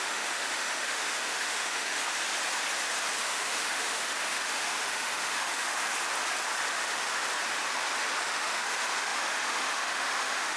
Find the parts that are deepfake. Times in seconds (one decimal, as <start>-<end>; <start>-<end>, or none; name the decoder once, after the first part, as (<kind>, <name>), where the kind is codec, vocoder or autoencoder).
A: 0.0-2.0 (autoencoder, DAC-VAE); 3.2-5.8; 6.7-7.3; 8.2-10.6